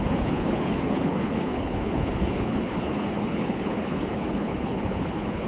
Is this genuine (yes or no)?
no